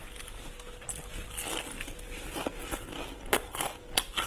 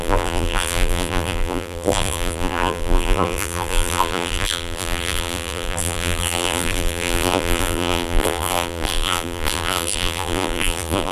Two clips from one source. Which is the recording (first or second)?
first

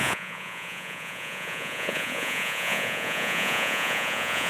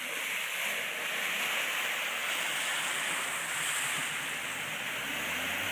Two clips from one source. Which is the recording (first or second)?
second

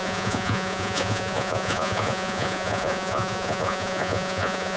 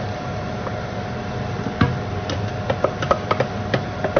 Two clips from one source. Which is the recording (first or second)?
second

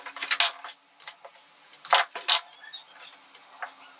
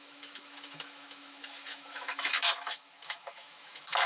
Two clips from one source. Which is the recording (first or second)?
first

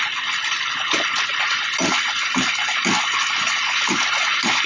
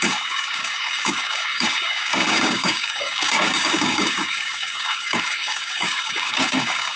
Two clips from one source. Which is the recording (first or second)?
first